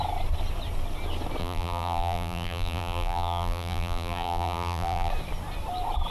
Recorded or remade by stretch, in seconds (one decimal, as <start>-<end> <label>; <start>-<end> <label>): 0.0-1.4 recorded; 1.4-5.1 remade; 5.1-6.1 recorded